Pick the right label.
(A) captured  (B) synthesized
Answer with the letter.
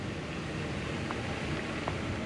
A